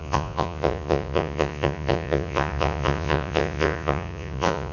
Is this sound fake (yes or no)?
yes